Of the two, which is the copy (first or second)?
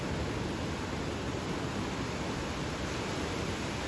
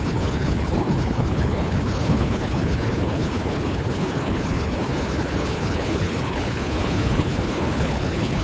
second